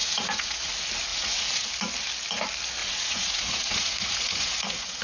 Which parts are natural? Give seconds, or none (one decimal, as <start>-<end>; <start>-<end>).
0.7-1.1; 1.7-2.8